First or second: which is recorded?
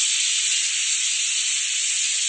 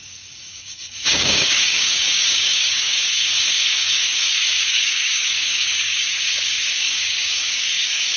first